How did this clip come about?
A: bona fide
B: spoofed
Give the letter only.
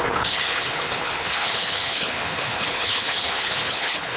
B